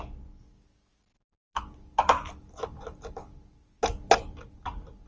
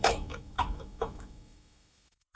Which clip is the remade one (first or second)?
second